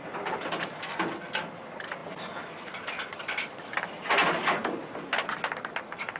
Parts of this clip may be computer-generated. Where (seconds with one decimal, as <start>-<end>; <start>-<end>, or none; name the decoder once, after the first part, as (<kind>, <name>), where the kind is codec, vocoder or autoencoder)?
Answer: none